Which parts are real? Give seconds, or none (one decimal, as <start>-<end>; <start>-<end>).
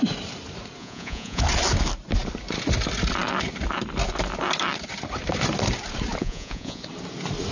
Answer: 0.0-0.8; 1.4-6.2; 6.8-7.5